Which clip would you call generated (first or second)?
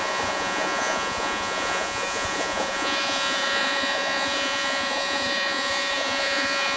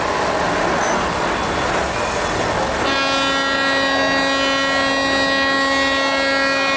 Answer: first